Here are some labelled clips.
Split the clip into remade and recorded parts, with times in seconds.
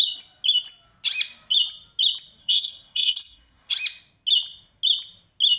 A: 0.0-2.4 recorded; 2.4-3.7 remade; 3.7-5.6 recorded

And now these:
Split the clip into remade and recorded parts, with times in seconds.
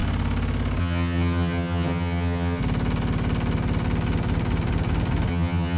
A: 0.0-0.8 recorded; 0.8-2.6 remade; 2.6-5.3 recorded; 5.3-5.8 remade